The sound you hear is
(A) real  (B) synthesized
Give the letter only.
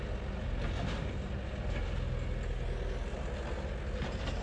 A